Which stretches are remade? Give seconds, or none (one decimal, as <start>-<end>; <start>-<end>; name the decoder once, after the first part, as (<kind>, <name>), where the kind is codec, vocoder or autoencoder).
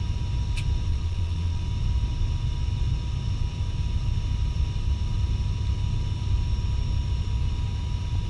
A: 0.9-1.6 (vocoder, Vocos)